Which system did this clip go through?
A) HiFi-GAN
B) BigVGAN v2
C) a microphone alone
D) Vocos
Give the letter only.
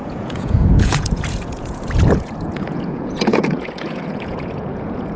D